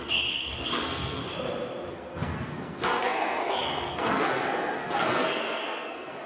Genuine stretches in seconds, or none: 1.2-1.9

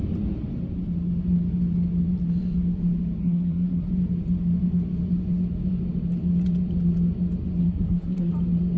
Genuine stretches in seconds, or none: 0.0-3.2; 3.9-7.6; 8.3-8.8

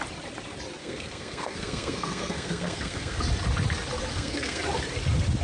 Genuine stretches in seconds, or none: 0.0-0.8; 3.2-4.1; 4.6-5.4

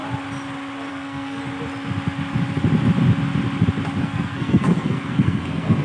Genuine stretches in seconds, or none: 0.0-0.9; 1.4-4.0